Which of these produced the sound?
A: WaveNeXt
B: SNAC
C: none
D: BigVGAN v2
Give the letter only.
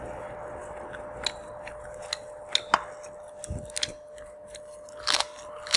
C